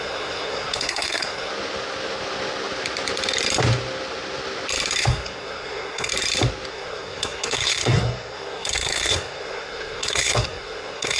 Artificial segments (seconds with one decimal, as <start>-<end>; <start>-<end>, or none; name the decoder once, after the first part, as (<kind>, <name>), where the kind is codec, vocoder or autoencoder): 0.0-1.5 (codec, SNAC); 5.0-6.1; 6.7-11.2